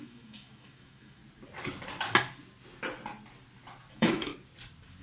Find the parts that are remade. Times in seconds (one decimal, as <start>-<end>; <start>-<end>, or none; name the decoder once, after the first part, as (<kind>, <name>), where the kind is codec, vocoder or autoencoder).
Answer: 0.0-1.2 (autoencoder, DAC-VAE); 3.9-4.3